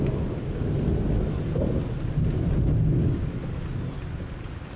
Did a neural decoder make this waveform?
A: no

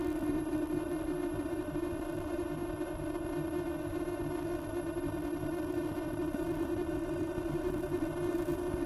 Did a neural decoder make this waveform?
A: yes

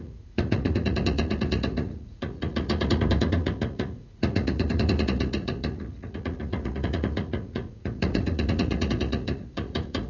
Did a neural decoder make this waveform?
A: yes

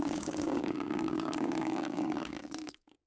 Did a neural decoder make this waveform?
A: yes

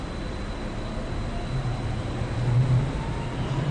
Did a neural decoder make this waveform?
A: no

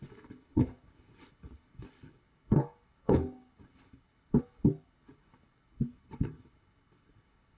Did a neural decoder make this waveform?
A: yes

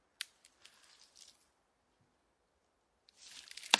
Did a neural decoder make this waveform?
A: no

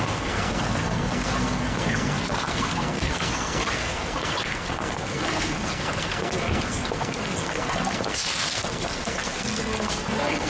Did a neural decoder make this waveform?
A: yes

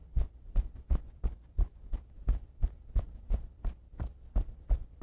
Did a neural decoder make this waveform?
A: no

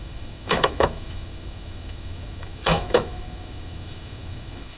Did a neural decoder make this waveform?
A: yes